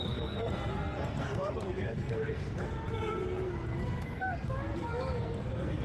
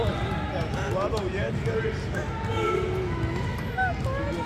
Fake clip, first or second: first